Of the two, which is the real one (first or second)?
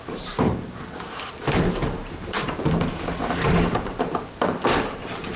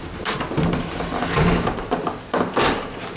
second